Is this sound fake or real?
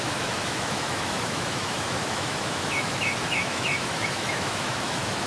fake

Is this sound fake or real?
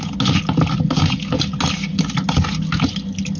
real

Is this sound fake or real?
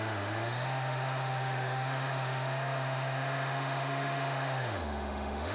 fake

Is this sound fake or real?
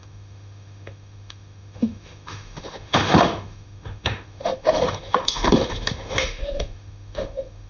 fake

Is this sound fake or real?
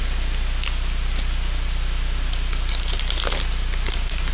real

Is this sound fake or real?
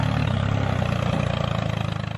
real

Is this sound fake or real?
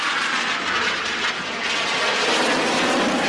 real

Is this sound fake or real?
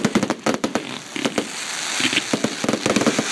real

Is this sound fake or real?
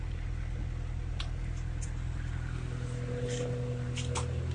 real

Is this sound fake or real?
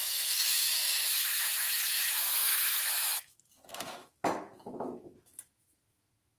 fake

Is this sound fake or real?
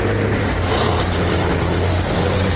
real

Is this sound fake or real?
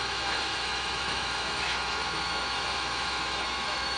fake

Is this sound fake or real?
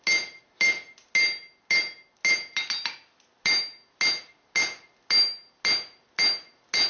real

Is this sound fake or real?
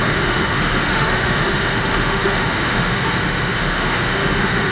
fake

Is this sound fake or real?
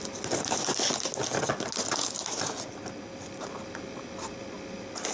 real